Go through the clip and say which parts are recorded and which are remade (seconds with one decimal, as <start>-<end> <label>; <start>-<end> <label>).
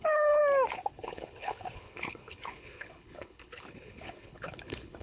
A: 0.0-0.4 remade; 0.4-0.9 recorded; 0.9-5.0 remade